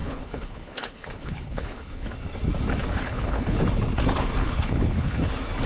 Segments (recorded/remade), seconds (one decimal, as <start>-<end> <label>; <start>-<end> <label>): 0.0-2.1 remade; 2.1-2.9 recorded; 2.9-3.6 remade; 3.6-4.4 recorded; 4.4-5.3 remade; 5.3-5.7 recorded